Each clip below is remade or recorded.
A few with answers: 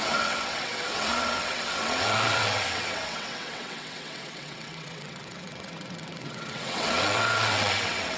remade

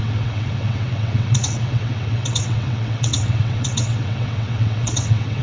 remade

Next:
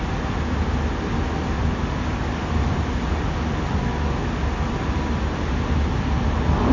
recorded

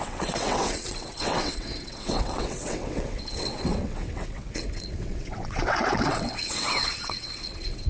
remade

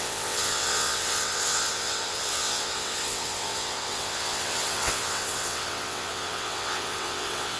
remade